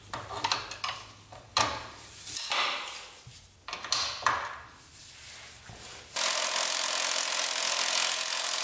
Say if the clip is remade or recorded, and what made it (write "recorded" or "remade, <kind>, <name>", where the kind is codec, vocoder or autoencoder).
recorded